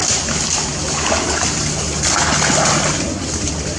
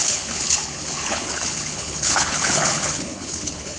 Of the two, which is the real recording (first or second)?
first